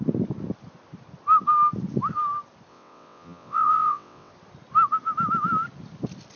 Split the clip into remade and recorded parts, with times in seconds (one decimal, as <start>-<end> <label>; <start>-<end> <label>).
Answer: 0.0-2.7 recorded; 2.7-4.3 remade; 4.3-6.4 recorded